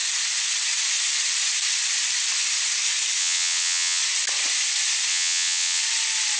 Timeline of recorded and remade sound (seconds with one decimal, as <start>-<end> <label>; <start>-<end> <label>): 0.0-3.2 recorded; 3.2-4.0 remade; 4.0-5.1 recorded; 5.1-5.8 remade; 5.8-6.4 recorded